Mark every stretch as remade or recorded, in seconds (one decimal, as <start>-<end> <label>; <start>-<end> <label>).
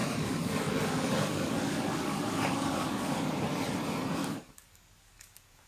0.0-3.4 remade; 3.4-4.2 recorded; 4.2-5.7 remade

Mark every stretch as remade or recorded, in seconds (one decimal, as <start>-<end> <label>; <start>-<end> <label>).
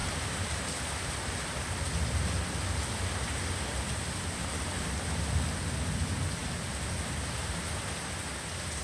0.0-1.3 remade; 1.3-6.4 recorded; 6.4-7.8 remade; 7.8-8.8 recorded